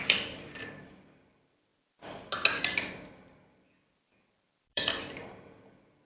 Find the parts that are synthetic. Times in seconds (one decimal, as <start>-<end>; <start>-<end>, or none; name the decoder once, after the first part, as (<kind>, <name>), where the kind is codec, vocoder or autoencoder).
0.0-1.7 (vocoder, BigVGAN v2); 2.6-6.0